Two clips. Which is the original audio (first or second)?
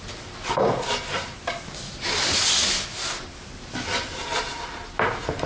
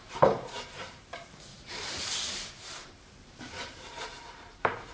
first